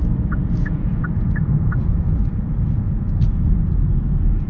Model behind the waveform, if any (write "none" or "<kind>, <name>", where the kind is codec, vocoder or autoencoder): vocoder, Vocos